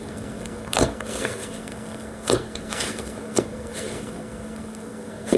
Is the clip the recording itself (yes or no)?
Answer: no